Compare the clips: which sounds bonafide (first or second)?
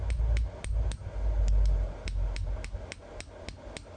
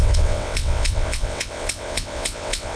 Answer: first